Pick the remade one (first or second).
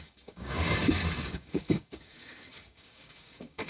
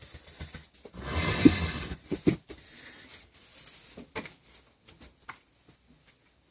first